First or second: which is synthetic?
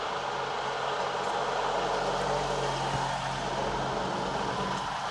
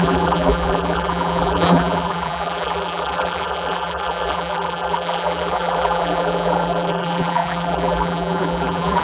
second